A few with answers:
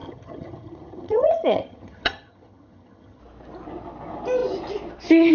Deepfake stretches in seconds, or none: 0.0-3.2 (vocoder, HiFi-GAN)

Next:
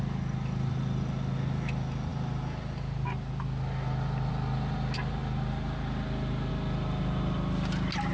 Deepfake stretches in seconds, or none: none

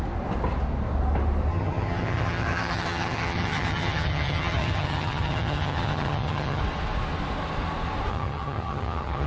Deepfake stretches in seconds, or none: 1.5-6.6 (vocoder, HiFi-GAN); 8.1-9.3

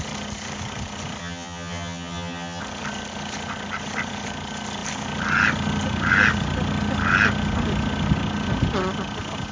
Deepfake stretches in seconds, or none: 1.2-2.6 (vocoder, HiFi-GAN)

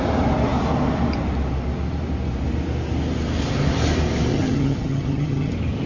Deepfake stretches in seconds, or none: 4.3-5.5 (vocoder, HiFi-GAN)